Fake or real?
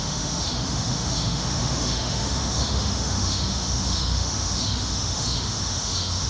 fake